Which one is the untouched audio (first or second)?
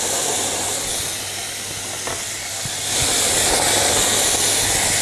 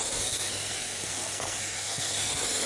first